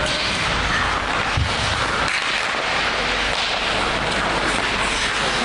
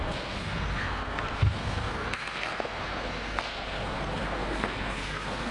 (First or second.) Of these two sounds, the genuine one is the first